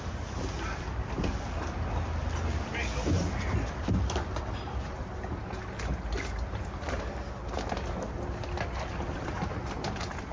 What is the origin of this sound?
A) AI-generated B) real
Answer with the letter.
B